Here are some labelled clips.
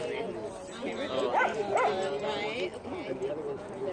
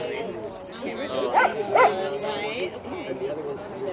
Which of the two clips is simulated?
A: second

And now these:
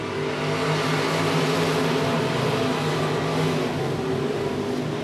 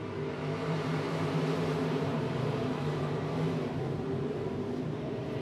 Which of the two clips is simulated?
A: second